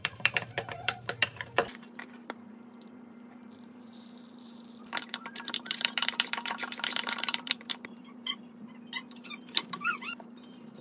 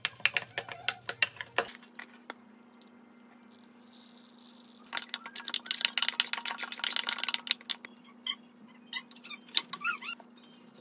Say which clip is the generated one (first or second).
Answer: first